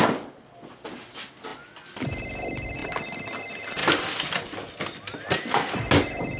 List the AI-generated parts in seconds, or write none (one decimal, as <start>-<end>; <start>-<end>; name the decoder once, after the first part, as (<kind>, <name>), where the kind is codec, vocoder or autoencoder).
none